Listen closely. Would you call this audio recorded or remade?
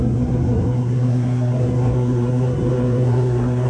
remade